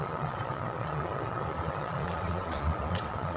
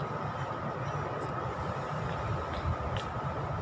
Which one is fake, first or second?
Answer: first